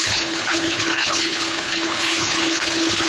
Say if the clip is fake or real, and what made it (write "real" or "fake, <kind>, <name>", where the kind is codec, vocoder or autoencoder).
fake, codec, HILCodec